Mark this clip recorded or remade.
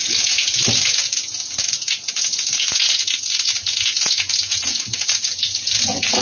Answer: remade